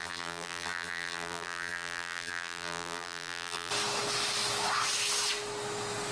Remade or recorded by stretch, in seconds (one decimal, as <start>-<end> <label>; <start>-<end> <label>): 0.0-3.7 remade; 3.7-6.1 recorded